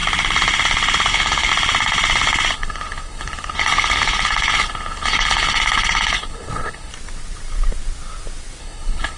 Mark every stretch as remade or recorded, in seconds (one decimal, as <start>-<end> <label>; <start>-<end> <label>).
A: 0.0-1.1 recorded; 1.1-1.5 remade; 1.5-2.5 recorded; 2.5-6.9 remade; 6.9-8.6 recorded; 8.6-9.2 remade